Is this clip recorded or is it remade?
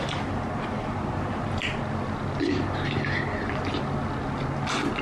recorded